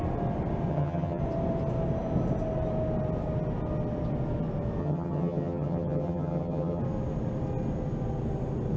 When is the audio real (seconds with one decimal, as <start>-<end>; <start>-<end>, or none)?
0.0-0.7; 1.2-4.8; 6.8-8.8